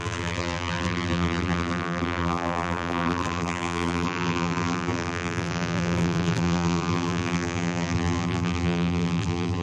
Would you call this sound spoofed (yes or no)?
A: yes